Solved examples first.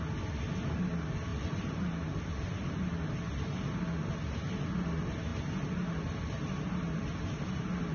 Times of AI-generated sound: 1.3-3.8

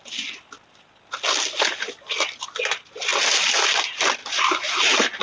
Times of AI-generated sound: none

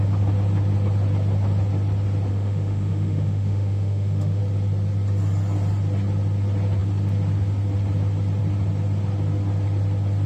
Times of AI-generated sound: 2.3-4.4